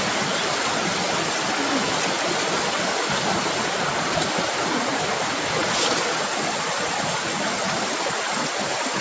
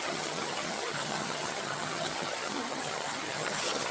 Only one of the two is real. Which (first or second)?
first